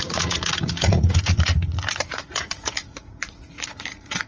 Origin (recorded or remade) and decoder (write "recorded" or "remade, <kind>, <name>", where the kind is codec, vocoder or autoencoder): remade, vocoder, Vocos